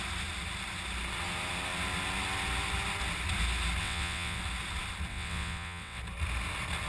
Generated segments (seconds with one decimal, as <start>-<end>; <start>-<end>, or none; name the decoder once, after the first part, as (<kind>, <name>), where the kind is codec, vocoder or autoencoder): 3.8-4.4 (vocoder, WaveNeXt); 5.1-6.0